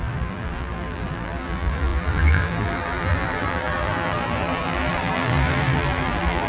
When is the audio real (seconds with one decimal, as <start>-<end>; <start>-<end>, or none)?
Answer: none